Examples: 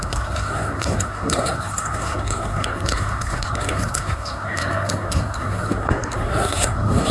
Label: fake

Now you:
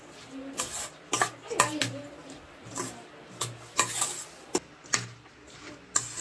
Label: real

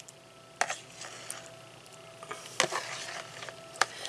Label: real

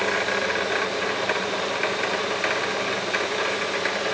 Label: real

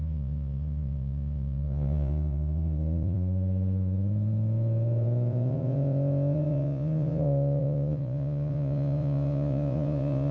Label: fake